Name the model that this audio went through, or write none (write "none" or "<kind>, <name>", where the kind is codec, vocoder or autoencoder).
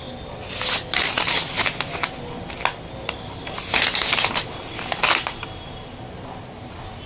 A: none